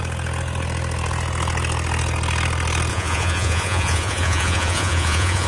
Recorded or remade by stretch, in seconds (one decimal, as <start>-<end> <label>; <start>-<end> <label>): 0.0-2.9 recorded; 2.9-5.5 remade